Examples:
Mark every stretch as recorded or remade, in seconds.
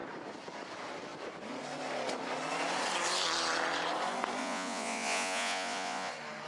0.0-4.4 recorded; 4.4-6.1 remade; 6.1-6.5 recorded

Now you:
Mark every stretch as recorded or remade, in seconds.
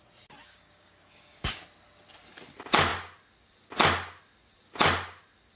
0.0-0.4 recorded; 0.4-1.6 remade; 1.6-5.6 recorded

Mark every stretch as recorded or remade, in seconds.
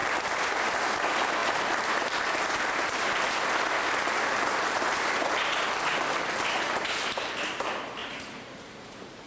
0.0-8.0 recorded; 8.0-9.3 remade